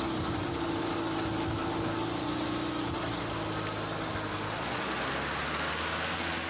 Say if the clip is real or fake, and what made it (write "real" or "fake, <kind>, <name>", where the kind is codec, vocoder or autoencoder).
real